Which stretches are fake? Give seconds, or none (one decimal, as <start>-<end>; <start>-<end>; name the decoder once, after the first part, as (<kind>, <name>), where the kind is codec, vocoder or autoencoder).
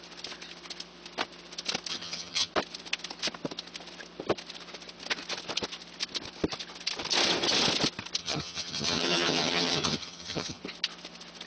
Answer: 1.9-2.5 (vocoder, HiFi-GAN); 8.2-10.6